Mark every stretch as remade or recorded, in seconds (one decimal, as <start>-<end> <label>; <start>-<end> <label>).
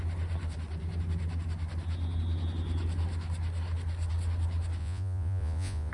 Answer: 0.0-4.8 recorded; 4.8-5.9 remade